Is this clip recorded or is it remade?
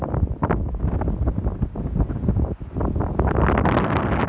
recorded